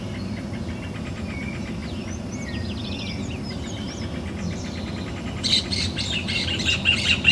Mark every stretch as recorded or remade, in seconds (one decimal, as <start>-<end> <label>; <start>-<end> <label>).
0.0-7.3 recorded